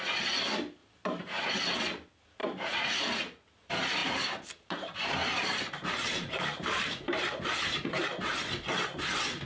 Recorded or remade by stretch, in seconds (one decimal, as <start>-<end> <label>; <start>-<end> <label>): 0.0-0.8 recorded; 0.8-1.6 remade; 1.6-2.4 recorded; 2.4-3.0 remade; 3.0-4.0 recorded; 4.0-8.4 remade; 8.4-9.5 recorded